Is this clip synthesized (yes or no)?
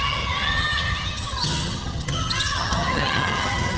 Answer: yes